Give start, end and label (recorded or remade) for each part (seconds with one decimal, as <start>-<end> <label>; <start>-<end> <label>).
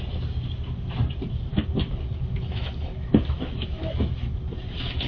0.0-1.5 recorded; 1.5-4.4 remade; 4.4-5.1 recorded